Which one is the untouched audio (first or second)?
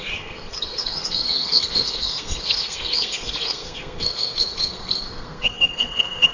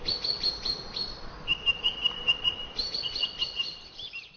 second